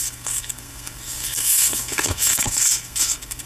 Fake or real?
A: fake